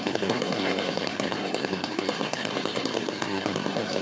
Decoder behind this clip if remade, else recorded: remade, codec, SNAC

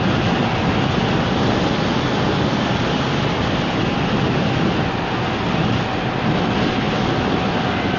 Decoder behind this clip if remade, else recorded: recorded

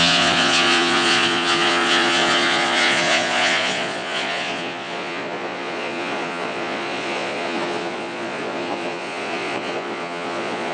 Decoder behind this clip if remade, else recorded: remade, vocoder, Vocos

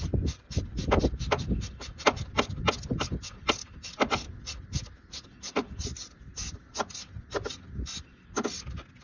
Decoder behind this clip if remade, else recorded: recorded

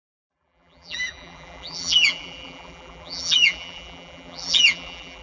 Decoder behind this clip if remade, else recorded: remade, vocoder, BigVGAN v2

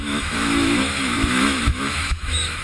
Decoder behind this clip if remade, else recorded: remade, autoencoder, DAC-VAE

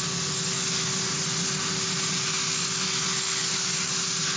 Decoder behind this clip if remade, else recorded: recorded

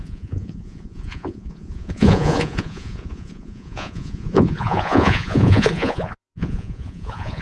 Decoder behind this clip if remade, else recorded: remade, vocoder, Vocos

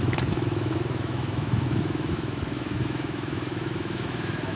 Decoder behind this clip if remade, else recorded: remade, autoencoder, DAC-VAE